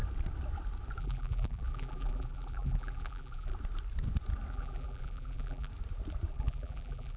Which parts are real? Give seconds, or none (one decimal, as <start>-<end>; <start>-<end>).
0.0-1.0; 3.5-4.5; 5.7-6.3